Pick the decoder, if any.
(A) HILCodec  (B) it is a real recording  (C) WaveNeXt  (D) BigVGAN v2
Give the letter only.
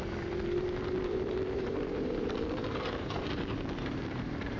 D